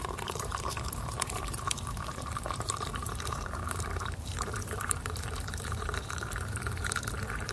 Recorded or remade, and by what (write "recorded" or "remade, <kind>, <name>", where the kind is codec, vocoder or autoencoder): remade, vocoder, BigVGAN v2